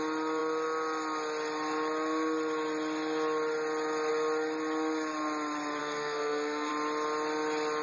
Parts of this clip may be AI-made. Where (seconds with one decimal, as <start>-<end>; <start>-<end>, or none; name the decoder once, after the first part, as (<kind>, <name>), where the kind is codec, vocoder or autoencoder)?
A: 5.8-6.7 (codec, SNAC)